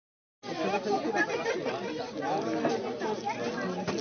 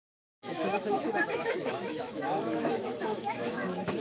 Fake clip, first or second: second